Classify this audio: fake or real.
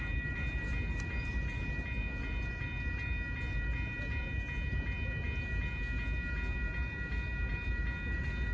real